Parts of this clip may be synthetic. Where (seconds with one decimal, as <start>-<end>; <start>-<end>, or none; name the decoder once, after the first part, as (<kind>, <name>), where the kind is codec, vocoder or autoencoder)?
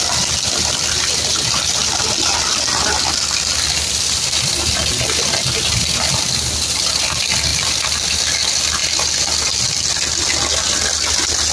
7.5-8.2 (vocoder, BigVGAN v2)